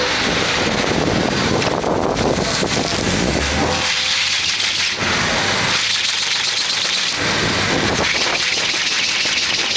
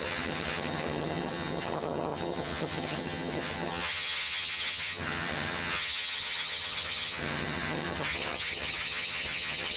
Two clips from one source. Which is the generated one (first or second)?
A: second